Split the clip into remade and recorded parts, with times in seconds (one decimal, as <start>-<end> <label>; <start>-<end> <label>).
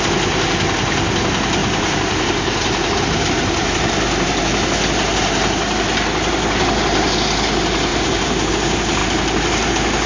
0.0-1.6 recorded; 1.6-4.4 remade; 4.4-7.9 recorded; 7.9-8.5 remade; 8.5-10.1 recorded